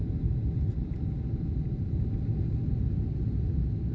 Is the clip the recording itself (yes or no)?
yes